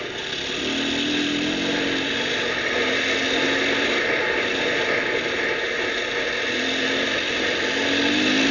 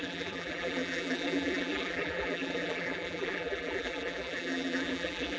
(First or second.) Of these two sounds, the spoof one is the second